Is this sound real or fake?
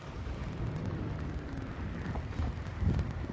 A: real